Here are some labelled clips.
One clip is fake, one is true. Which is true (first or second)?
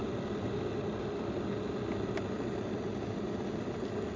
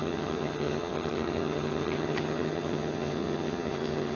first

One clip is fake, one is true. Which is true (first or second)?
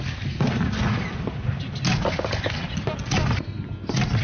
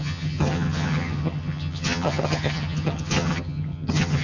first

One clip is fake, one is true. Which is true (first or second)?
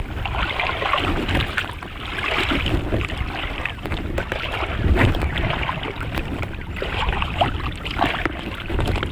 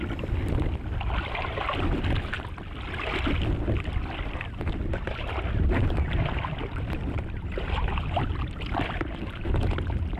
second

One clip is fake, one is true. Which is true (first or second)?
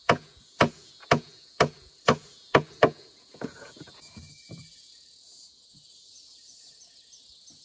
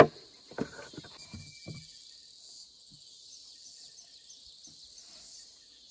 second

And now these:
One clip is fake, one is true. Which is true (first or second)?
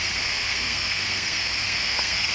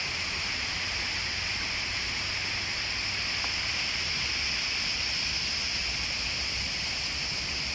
second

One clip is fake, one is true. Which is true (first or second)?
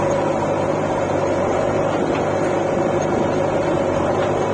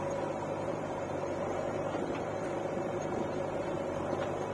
first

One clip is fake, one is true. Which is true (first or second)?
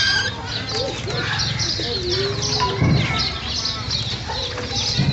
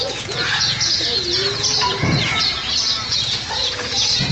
first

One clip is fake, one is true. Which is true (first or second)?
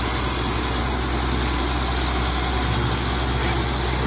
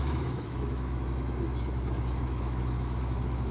first